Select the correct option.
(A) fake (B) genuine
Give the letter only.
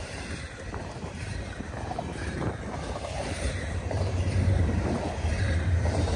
A